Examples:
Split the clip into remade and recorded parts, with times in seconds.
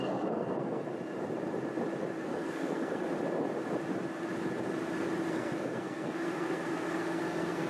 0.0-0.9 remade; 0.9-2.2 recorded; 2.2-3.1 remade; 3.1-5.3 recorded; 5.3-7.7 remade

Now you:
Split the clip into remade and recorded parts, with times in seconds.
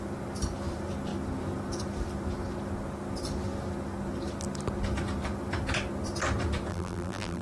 0.0-6.7 recorded; 6.7-7.4 remade